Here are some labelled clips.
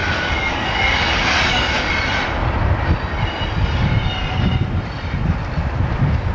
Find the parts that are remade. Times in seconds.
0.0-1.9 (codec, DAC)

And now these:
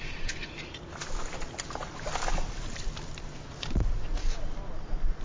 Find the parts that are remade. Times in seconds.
none

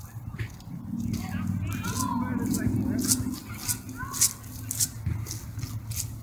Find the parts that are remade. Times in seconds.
none

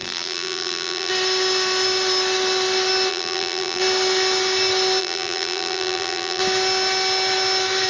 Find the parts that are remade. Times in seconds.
0.0-1.1 (vocoder, BigVGAN v2); 3.1-3.8; 5.0-6.4

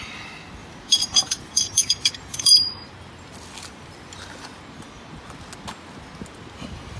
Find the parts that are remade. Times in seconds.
0.6-2.9 (vocoder, BigVGAN v2)

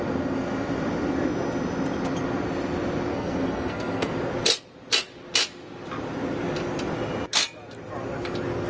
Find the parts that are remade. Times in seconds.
3.1-4.1 (codec, SNAC)

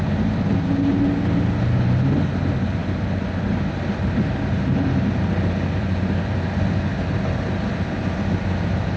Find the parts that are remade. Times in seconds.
none